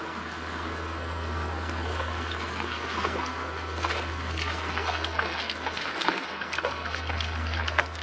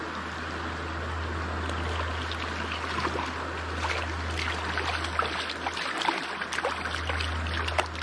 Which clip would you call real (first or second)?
second